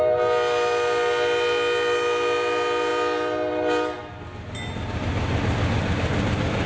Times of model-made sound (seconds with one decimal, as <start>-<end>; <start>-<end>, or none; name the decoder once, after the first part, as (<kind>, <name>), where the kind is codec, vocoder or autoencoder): none